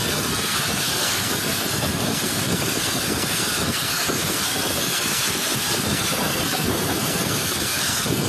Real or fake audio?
fake